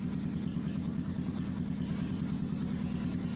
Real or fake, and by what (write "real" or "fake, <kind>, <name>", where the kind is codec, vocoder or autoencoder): real